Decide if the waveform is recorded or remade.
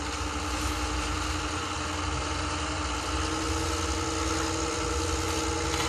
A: recorded